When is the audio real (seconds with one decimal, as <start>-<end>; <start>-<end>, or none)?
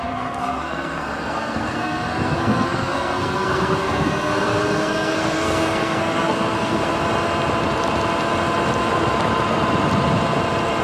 6.9-10.8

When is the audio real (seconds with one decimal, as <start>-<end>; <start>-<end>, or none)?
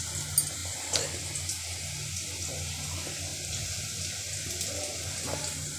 0.0-5.8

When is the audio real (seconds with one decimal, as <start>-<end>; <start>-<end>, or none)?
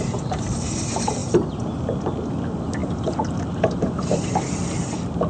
0.0-2.8; 4.3-5.3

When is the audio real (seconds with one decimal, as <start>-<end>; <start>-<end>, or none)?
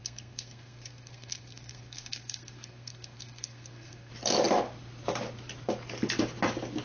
4.1-6.8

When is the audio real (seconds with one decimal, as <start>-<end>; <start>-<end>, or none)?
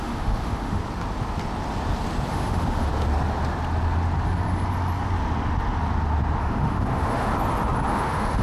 0.8-2.3; 2.9-6.4; 7.3-7.9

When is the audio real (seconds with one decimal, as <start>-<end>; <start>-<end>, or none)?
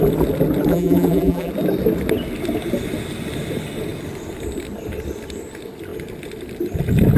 0.0-0.7; 1.5-7.2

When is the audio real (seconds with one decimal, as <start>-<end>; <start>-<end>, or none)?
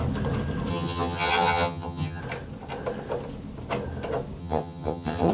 0.0-0.7; 2.2-4.4